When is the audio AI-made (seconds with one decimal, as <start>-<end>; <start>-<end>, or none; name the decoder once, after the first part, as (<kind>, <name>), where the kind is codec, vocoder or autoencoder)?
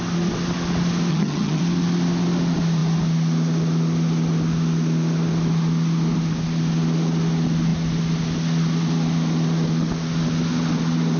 1.1-1.6 (vocoder, HiFi-GAN)